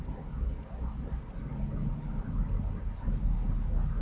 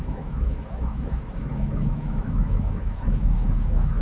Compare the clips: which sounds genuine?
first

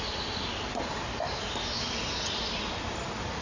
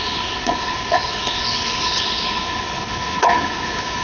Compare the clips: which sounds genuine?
first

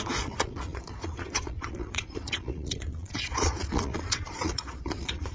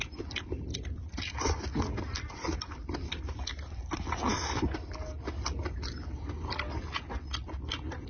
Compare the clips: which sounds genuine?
second